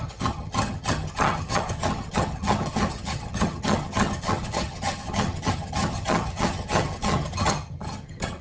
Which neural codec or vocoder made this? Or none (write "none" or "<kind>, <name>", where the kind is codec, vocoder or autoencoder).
vocoder, HiFi-GAN